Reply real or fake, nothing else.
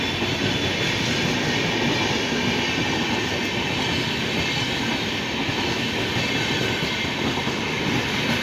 real